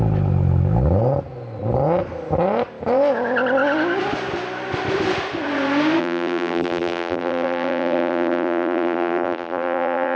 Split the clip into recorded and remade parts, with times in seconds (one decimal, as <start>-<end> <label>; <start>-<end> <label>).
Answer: 0.0-6.0 recorded; 6.0-10.2 remade